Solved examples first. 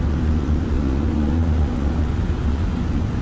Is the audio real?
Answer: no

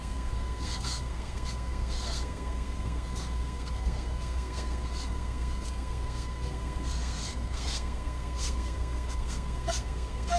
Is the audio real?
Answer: no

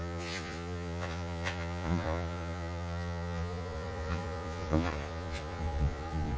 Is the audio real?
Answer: no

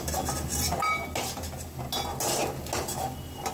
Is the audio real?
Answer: yes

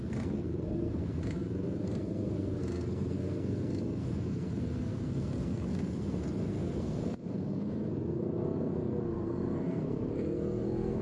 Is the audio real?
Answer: no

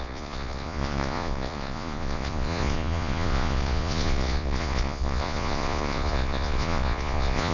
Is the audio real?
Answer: no